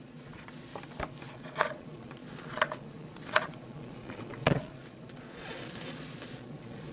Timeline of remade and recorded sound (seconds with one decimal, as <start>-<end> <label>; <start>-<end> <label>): 0.0-0.7 remade; 0.7-1.3 recorded; 1.3-6.9 remade